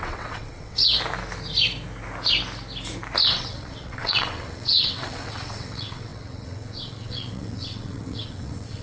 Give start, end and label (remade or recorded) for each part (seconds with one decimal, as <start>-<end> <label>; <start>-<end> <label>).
0.0-0.8 remade; 0.8-3.3 recorded; 3.3-8.8 remade